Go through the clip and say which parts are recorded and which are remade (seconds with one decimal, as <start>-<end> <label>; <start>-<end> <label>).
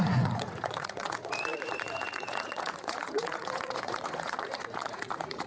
0.0-5.5 remade